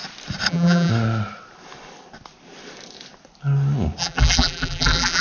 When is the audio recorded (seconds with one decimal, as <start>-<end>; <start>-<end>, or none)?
0.0-0.5; 0.9-4.0